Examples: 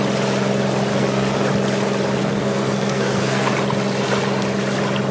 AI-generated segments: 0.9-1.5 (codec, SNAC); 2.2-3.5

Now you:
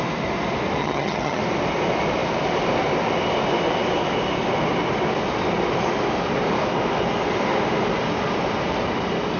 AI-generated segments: 0.8-1.4 (vocoder, HiFi-GAN)

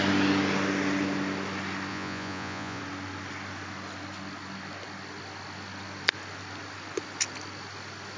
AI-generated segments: 1.9-2.8 (vocoder, Vocos)

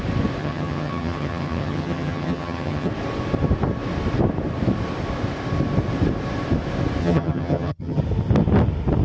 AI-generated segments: 0.4-2.9 (vocoder, HiFi-GAN); 7.0-8.0

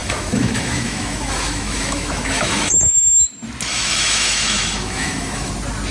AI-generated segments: 0.0-3.3 (autoencoder, DAC-VAE); 3.7-5.5

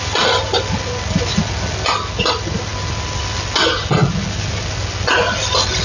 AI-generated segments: none

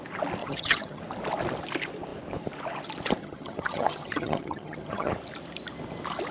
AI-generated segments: 0.4-1.0 (vocoder, HiFi-GAN); 3.2-5.1

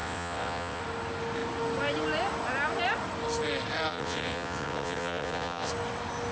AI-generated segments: 0.0-0.8 (vocoder, WaveNeXt); 3.9-5.7